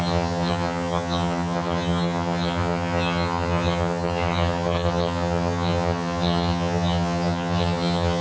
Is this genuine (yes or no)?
no